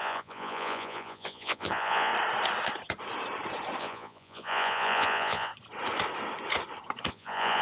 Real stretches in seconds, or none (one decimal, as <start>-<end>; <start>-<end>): 2.1-3.8; 5.5-7.1